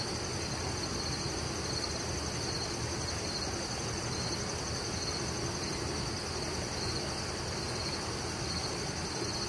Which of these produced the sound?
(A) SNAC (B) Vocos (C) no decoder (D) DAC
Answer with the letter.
C